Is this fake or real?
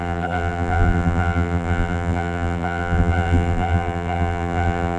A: fake